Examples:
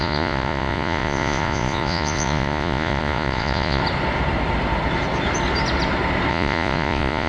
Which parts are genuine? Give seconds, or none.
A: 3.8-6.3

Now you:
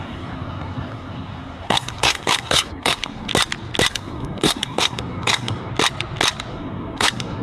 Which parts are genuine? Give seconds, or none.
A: 3.3-3.9; 5.7-6.5